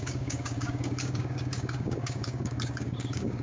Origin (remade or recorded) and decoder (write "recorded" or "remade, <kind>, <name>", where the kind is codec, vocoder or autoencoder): remade, codec, DAC